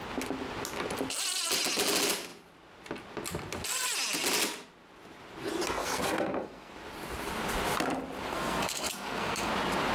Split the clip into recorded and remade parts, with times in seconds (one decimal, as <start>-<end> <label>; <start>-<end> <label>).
0.0-5.8 recorded; 5.8-6.7 remade; 6.7-8.3 recorded; 8.3-9.5 remade; 9.5-9.9 recorded